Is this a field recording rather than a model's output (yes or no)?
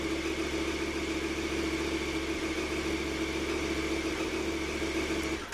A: yes